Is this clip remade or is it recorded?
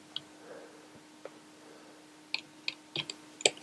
recorded